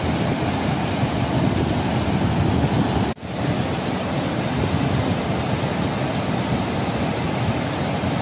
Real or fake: real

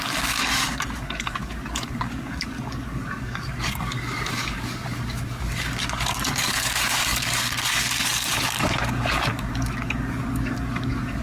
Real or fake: fake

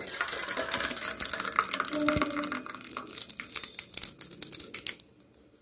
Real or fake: real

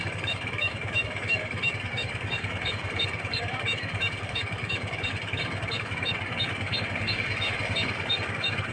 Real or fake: fake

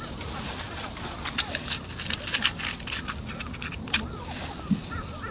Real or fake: real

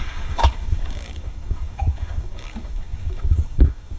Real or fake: fake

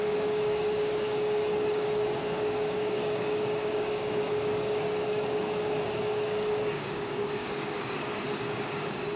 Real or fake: fake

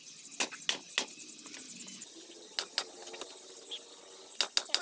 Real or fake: real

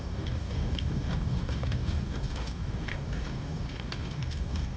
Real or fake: fake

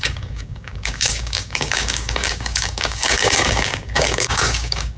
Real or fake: fake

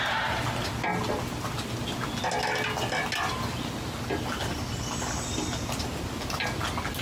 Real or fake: real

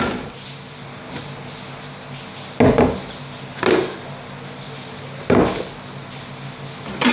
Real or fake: real